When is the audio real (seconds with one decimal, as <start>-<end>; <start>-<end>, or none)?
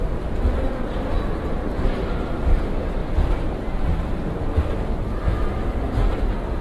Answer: 3.0-3.7; 5.3-6.6